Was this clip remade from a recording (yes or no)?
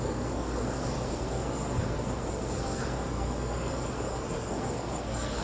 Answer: yes